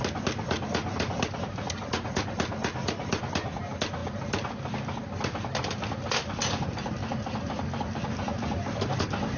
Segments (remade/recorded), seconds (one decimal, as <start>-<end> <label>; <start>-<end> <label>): 0.0-9.4 recorded